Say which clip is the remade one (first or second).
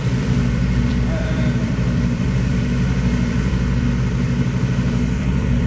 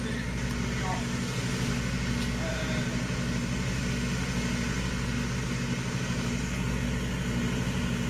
first